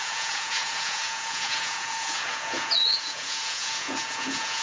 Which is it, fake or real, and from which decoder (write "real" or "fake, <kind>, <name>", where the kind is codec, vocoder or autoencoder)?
fake, vocoder, Vocos